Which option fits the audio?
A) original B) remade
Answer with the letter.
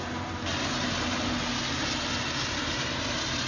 A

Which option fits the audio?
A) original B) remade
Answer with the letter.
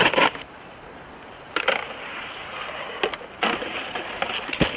A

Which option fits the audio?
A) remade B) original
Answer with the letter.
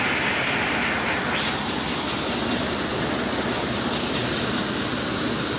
B